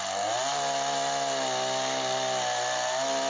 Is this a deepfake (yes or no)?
no